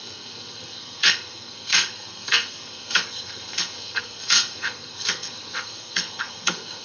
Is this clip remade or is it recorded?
remade